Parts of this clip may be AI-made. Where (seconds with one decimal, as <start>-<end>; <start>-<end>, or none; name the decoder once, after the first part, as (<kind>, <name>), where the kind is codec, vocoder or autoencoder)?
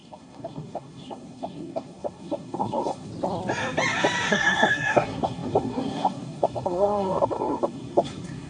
0.0-3.1 (codec, SNAC); 4.3-8.5